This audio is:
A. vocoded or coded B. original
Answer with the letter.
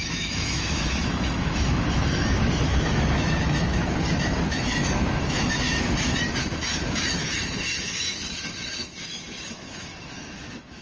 A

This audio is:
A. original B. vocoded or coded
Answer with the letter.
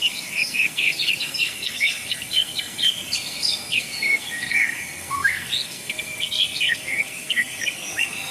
B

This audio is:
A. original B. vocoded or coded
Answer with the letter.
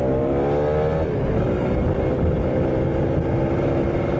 A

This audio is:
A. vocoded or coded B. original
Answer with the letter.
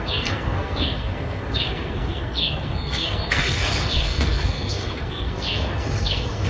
A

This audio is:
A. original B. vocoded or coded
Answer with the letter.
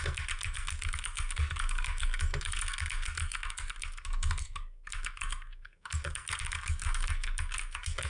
B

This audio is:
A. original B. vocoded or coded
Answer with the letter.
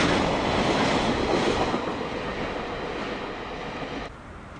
A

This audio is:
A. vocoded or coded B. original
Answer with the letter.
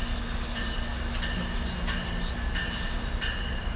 B